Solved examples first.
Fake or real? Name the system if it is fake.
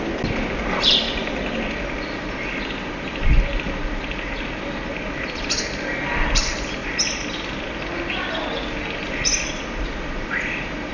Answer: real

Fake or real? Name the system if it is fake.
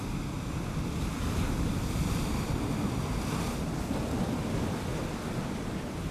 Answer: real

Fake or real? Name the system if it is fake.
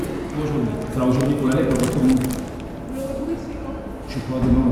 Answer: real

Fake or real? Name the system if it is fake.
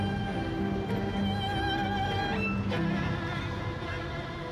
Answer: real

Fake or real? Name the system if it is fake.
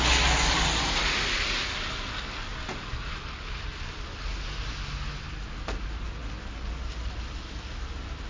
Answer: real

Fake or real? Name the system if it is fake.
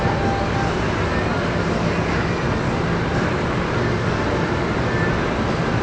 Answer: real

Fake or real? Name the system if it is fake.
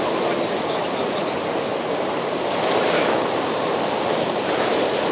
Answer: fake, vocoder, BigVGAN v2